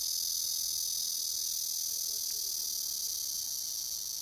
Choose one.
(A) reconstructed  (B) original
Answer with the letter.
B